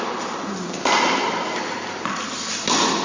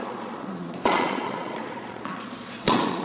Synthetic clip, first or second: second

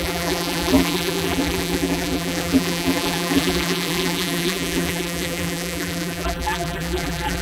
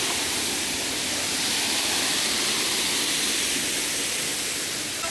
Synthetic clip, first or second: first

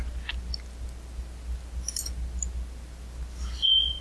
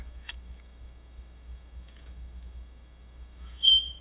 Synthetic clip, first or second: second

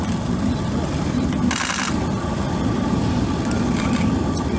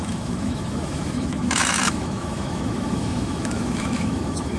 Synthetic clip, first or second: second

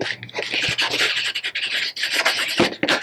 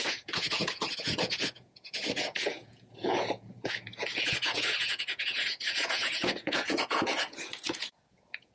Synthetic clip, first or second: second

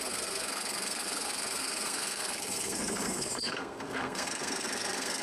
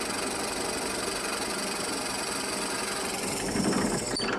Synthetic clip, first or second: first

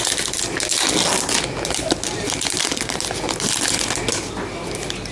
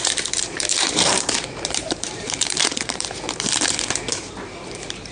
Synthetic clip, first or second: second